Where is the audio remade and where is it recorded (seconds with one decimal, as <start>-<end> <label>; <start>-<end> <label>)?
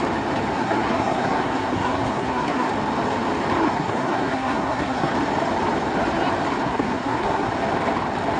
0.0-0.5 recorded; 0.5-2.7 remade; 2.7-3.6 recorded; 3.6-5.1 remade; 5.1-6.6 recorded; 6.6-7.5 remade; 7.5-8.4 recorded